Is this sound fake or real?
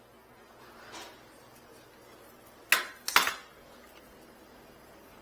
real